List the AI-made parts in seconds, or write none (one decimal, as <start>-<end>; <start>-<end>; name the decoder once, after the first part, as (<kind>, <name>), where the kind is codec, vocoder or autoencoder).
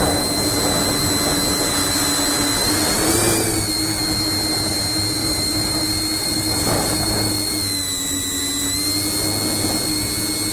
2.6-3.6 (vocoder, BigVGAN v2); 5.2-7.3